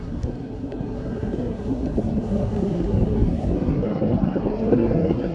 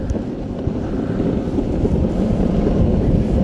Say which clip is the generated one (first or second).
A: first